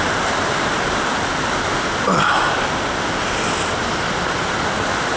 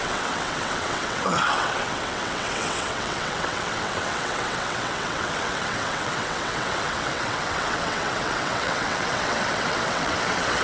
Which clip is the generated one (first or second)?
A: second